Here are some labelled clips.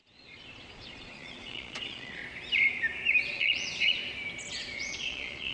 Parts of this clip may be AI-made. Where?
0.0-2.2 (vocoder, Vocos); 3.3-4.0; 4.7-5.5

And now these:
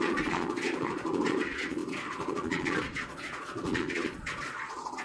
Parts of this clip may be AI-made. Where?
0.0-5.0 (vocoder, Vocos)

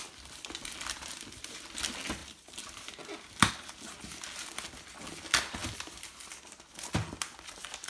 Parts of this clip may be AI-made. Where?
none